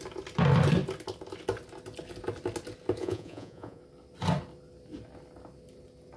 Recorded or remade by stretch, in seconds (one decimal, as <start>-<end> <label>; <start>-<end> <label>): 0.0-3.0 recorded; 3.0-3.8 remade; 3.8-6.2 recorded